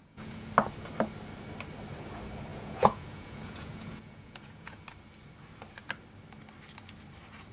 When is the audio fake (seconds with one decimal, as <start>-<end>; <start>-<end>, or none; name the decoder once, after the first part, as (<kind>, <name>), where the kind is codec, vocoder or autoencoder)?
0.0-0.5 (vocoder, Vocos); 2.5-4.8